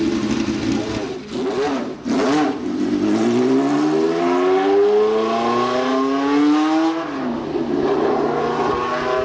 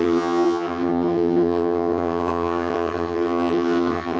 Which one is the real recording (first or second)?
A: first